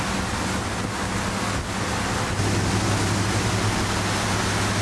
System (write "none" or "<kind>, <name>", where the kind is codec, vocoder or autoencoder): none